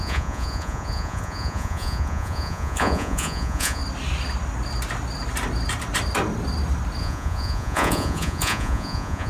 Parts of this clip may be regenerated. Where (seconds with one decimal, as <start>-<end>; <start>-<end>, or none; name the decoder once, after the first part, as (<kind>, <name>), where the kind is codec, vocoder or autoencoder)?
0.0-3.8 (vocoder, Vocos); 7.0-9.3